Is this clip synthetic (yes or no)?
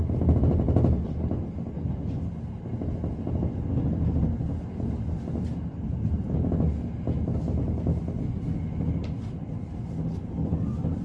no